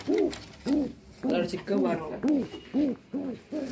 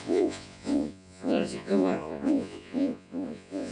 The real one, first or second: first